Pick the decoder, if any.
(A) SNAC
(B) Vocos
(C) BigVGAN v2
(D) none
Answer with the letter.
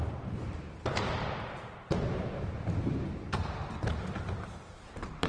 C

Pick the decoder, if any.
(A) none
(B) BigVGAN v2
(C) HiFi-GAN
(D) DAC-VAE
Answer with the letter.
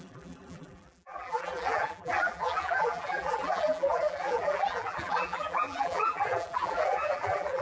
B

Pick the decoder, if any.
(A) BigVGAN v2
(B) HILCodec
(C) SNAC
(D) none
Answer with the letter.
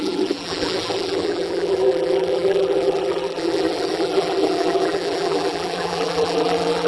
A